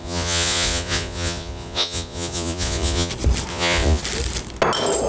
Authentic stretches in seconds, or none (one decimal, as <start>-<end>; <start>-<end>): 3.1-3.5; 4.0-5.1